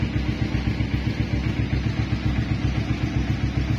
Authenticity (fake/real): real